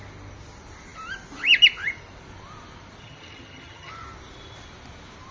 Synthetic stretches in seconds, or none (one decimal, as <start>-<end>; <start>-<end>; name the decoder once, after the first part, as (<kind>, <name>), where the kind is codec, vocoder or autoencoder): 3.0-3.9 (vocoder, HiFi-GAN)